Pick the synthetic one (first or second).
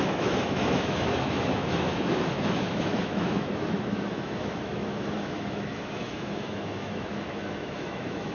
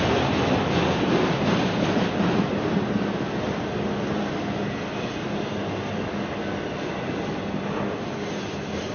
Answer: first